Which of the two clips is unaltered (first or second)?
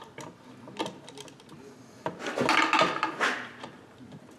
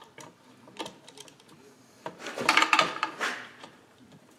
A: first